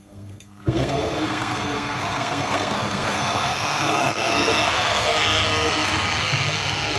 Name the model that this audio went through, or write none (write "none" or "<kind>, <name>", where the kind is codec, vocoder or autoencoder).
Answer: codec, SNAC